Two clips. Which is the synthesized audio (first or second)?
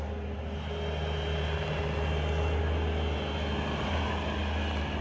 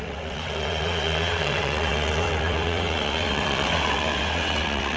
second